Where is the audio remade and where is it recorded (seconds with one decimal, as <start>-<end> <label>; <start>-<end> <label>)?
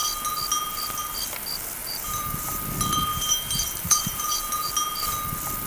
0.0-1.8 recorded; 1.8-2.6 remade; 2.6-3.1 recorded; 3.1-4.7 remade; 4.7-5.7 recorded